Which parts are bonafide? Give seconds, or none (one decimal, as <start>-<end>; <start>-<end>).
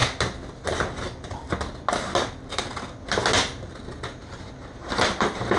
0.0-4.2